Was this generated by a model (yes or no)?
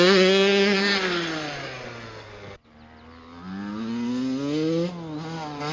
no